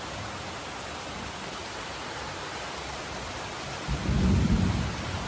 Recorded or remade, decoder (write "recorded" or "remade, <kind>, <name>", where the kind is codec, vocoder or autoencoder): recorded